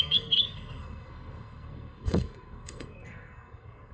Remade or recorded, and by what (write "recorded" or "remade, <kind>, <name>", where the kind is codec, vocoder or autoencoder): remade, codec, SNAC